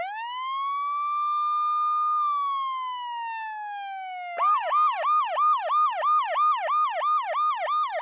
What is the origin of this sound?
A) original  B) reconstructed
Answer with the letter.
A